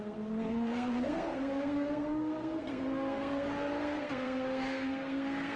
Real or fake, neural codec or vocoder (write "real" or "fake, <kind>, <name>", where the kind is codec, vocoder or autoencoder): fake, codec, SNAC